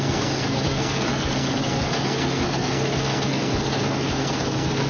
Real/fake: fake